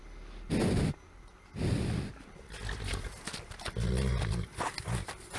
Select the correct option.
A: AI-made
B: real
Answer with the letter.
B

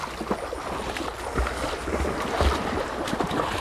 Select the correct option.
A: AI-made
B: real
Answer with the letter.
B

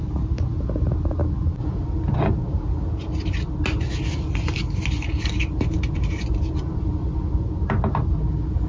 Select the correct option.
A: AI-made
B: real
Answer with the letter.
B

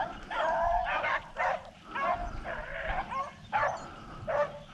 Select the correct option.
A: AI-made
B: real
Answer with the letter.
B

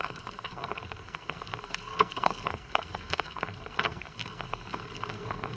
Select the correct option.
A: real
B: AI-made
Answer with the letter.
B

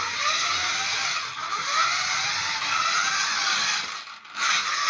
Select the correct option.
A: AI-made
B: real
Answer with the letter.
B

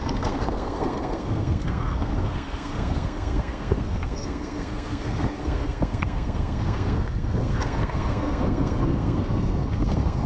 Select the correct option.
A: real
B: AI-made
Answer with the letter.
B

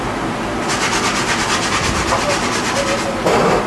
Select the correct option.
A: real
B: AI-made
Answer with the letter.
A